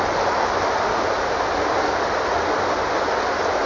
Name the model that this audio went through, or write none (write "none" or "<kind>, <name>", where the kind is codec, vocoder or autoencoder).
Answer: none